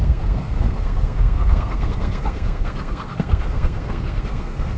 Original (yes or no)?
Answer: no